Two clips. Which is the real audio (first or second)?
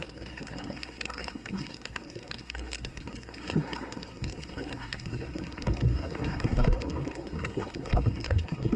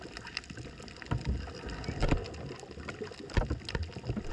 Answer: second